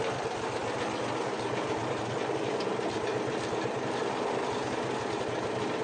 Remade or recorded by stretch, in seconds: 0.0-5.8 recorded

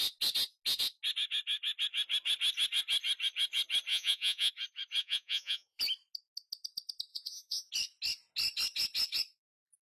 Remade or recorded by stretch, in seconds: 0.0-3.9 recorded; 3.9-4.5 remade; 4.5-5.0 recorded; 5.0-5.8 remade; 5.8-7.1 recorded; 7.1-7.7 remade; 7.7-9.9 recorded

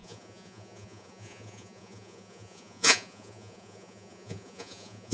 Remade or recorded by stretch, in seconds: 0.0-5.1 remade

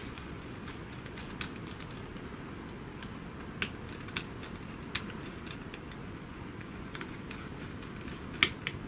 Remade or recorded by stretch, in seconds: 0.0-1.3 remade; 1.3-6.0 recorded; 6.0-7.5 remade; 7.5-8.9 recorded

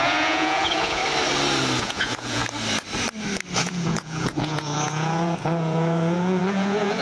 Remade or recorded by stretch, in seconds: 0.0-1.0 remade; 1.0-1.8 recorded; 1.8-2.4 remade; 2.4-3.6 recorded; 3.6-7.0 remade

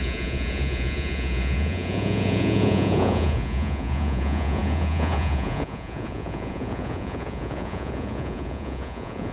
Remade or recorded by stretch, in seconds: 0.0-9.3 remade

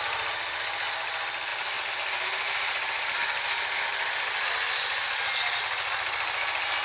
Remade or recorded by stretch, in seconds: 0.0-6.8 recorded

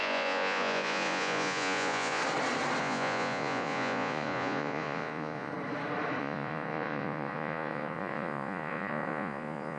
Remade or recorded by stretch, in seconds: 0.0-2.2 remade; 2.2-2.8 recorded; 2.8-5.5 remade; 5.5-6.2 recorded; 6.2-9.8 remade